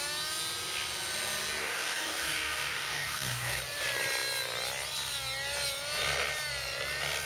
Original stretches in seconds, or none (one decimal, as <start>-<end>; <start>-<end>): 0.0-1.6; 3.6-7.3